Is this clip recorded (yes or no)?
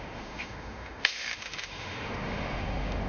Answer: no